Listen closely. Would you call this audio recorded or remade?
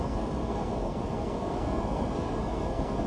remade